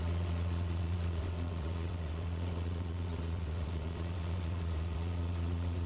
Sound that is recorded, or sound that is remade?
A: remade